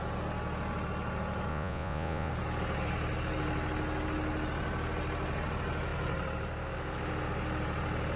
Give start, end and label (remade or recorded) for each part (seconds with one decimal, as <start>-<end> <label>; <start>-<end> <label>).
0.0-1.5 recorded; 1.5-2.3 remade; 2.3-8.2 recorded